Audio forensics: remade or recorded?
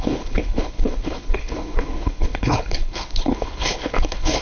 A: remade